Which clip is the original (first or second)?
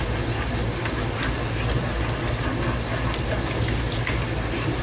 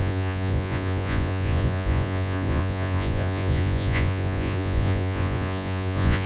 first